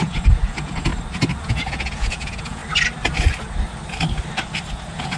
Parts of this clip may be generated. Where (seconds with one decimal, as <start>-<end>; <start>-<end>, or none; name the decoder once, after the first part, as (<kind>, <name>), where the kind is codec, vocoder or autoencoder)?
0.0-0.9 (vocoder, Vocos); 1.4-2.6; 4.7-5.2